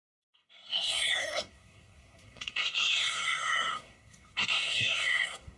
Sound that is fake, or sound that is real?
fake